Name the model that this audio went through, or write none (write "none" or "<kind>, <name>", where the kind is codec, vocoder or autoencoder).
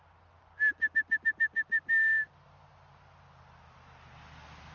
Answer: none